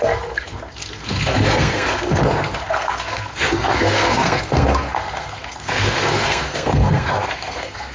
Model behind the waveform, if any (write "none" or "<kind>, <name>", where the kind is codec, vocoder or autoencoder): codec, SNAC